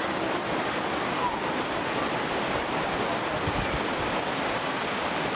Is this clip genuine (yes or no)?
yes